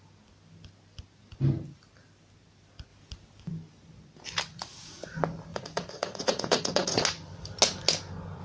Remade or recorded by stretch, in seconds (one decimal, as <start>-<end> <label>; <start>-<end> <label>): 0.0-4.5 recorded; 4.5-5.1 remade; 5.1-5.5 recorded; 5.5-7.0 remade; 7.0-8.4 recorded